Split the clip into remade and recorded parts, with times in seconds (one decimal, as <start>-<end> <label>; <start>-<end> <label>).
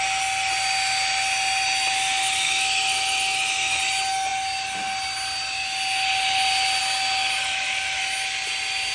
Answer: 0.0-2.2 recorded; 2.2-3.8 remade; 3.8-7.4 recorded; 7.4-8.0 remade; 8.0-8.9 recorded